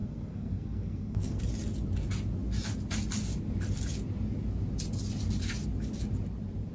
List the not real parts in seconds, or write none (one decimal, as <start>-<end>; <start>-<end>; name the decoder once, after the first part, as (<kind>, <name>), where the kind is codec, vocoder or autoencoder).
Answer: 0.0-1.4 (codec, SNAC)